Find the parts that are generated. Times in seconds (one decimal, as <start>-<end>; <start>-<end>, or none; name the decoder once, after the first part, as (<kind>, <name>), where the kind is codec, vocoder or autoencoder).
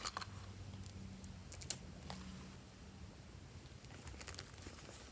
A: none